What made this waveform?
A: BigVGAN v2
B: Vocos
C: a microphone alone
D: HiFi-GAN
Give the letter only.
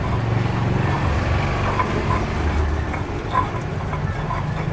C